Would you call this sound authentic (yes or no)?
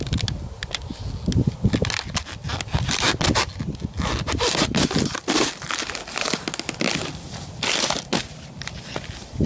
yes